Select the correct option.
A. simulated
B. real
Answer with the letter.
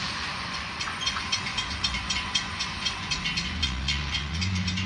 A